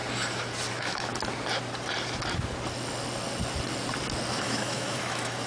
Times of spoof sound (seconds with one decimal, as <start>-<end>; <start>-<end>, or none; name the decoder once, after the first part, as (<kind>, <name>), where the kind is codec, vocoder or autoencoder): 0.7-1.1 (autoencoder, DAC-VAE); 4.3-5.5